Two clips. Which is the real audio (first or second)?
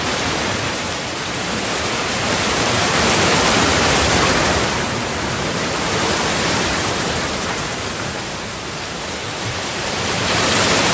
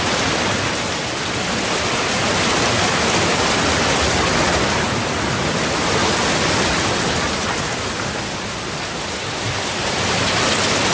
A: second